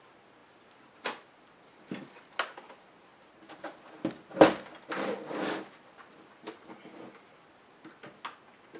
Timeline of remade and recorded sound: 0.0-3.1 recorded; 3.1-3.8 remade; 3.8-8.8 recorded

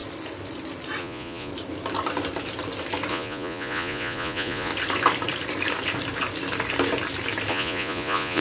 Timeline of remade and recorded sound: 0.0-1.0 recorded; 1.0-1.5 remade; 1.5-3.1 recorded; 3.1-4.7 remade; 4.7-7.5 recorded; 7.5-8.4 remade

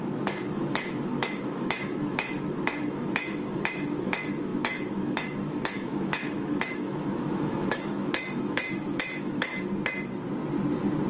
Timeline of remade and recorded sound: 0.0-9.5 remade; 9.5-11.1 recorded

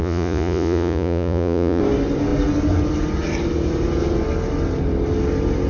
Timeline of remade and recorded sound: 0.0-1.8 remade; 1.8-5.7 recorded

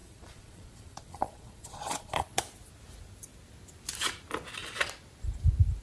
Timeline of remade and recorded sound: 0.0-2.4 remade; 2.4-5.8 recorded

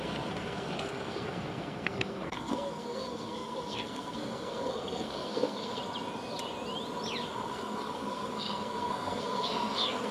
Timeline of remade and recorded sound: 0.0-5.8 remade; 5.8-7.3 recorded; 7.3-10.1 remade

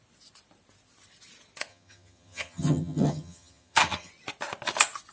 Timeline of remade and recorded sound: 0.0-1.7 recorded; 1.7-4.1 remade; 4.1-5.1 recorded